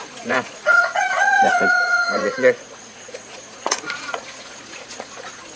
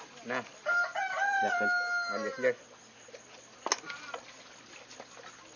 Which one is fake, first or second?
first